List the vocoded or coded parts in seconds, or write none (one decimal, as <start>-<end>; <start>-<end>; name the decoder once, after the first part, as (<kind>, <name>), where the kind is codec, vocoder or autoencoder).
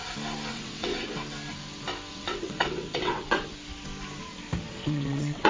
0.5-1.1 (vocoder, WaveNeXt); 2.1-3.5; 4.7-5.5